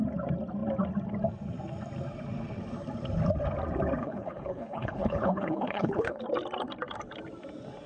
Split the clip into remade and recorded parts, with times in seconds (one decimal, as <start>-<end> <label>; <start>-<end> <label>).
0.0-4.0 recorded; 4.0-6.2 remade; 6.2-7.9 recorded